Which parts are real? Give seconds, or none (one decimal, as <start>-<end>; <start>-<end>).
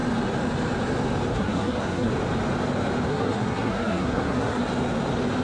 0.0-1.3; 2.1-3.1; 4.6-5.4